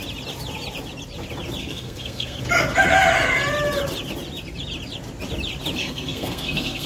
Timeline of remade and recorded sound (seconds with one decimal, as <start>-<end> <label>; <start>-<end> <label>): 0.0-1.6 recorded; 1.6-2.4 remade; 2.4-5.8 recorded; 5.8-6.9 remade